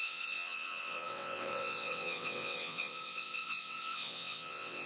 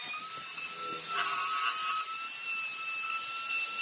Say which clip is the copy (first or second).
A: first